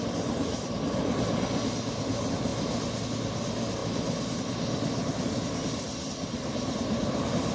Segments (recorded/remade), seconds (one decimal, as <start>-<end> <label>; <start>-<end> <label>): 0.0-7.5 recorded